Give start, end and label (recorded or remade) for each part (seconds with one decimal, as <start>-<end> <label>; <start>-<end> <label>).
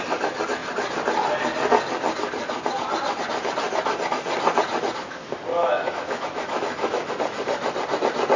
0.0-5.5 recorded; 5.5-7.1 remade; 7.1-8.4 recorded